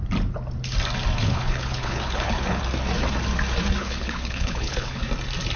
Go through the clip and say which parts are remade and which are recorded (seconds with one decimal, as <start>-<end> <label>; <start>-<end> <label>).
0.0-1.2 recorded; 1.2-2.6 remade; 2.6-3.8 recorded; 3.8-5.0 remade; 5.0-5.6 recorded